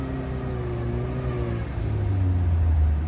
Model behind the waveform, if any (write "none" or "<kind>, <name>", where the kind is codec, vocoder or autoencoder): none